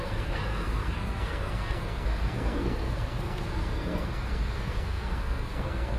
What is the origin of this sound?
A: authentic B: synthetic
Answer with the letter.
B